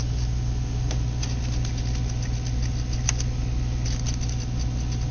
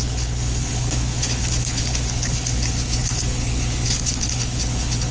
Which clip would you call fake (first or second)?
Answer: second